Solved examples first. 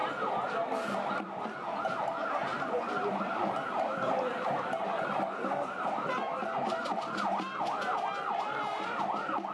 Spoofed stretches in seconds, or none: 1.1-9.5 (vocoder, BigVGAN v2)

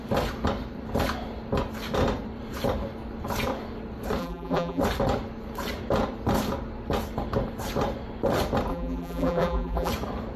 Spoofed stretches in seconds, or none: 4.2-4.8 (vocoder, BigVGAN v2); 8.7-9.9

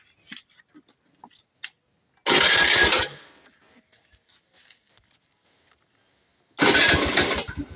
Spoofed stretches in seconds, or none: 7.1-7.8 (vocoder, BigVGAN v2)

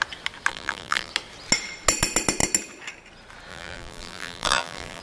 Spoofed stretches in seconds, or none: 0.5-1.1 (vocoder, BigVGAN v2); 3.5-5.0

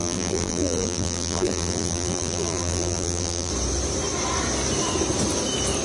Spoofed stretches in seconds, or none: 0.0-3.5 (vocoder, BigVGAN v2)